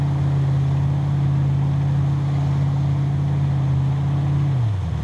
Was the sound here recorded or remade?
recorded